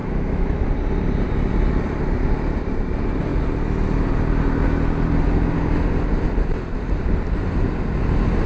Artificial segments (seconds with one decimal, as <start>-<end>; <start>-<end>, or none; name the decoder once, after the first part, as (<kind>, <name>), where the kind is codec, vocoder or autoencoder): 0.0-0.7 (autoencoder, DAC-VAE)